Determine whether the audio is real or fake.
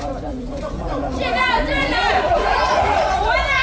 fake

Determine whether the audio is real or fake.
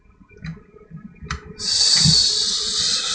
fake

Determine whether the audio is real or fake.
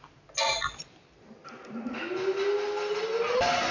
real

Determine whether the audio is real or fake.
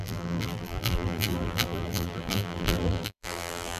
fake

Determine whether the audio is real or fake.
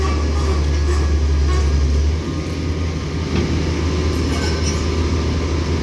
real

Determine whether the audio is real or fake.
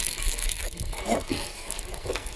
fake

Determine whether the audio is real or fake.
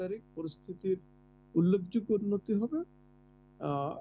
real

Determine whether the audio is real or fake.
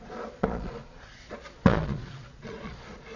fake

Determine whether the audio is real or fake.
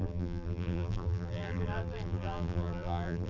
fake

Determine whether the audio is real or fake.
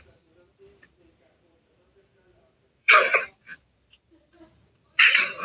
fake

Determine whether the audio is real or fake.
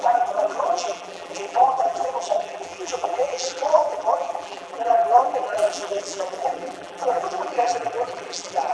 fake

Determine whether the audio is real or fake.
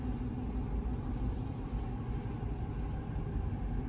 real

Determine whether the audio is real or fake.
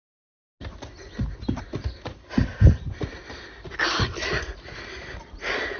real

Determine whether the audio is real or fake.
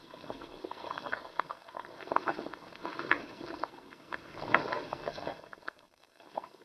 fake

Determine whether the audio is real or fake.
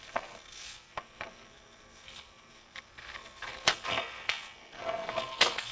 fake